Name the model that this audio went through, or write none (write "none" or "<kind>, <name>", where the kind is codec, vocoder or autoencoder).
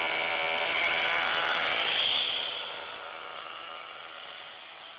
none